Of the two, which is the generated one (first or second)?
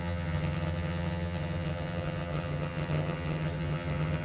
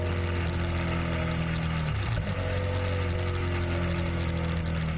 first